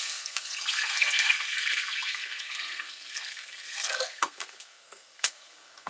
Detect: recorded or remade remade